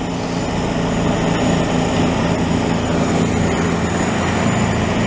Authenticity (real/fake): real